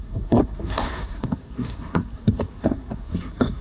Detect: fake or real fake